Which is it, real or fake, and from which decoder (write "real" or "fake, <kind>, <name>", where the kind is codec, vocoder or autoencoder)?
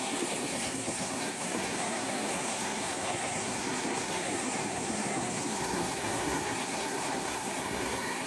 fake, codec, SNAC